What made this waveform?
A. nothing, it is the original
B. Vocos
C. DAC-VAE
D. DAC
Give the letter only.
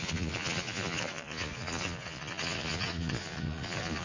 B